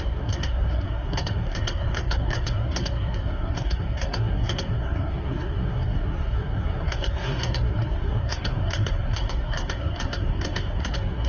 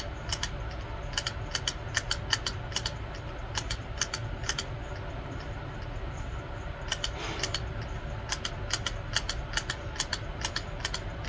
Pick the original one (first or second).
second